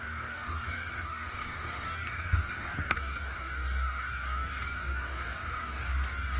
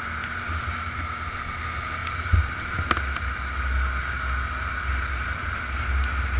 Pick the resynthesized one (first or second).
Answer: first